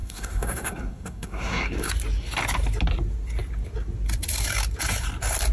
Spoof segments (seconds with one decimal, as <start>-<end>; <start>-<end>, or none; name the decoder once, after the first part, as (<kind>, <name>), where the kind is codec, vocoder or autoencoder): 0.0-1.9 (codec, SNAC)